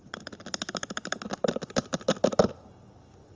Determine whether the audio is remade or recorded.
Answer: recorded